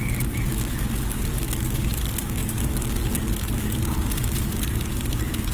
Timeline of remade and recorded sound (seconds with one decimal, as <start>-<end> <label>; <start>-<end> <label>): 0.0-5.5 remade